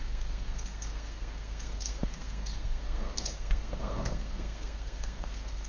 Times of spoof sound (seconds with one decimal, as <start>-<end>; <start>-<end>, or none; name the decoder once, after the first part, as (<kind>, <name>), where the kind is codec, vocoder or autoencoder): 0.0-5.7 (codec, SNAC)